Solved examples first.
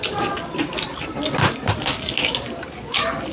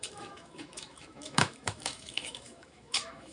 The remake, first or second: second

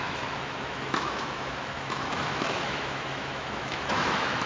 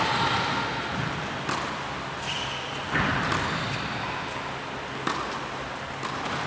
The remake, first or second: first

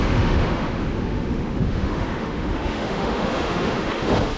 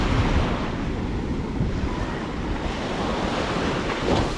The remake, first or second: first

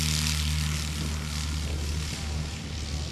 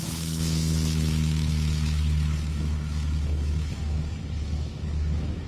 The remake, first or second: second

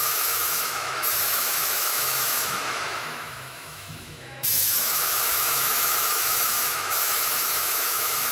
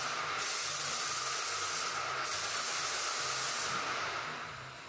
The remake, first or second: first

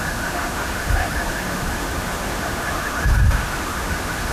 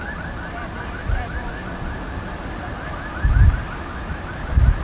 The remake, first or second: first